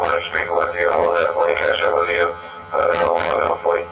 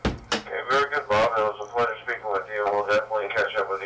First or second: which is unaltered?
second